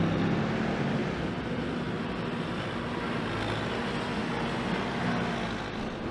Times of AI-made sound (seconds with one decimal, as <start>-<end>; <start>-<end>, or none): none